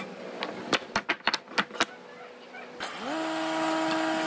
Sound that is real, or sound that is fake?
real